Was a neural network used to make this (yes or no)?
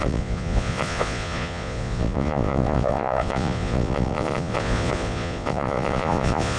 yes